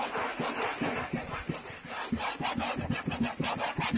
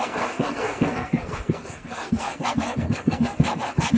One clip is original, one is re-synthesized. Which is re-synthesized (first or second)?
second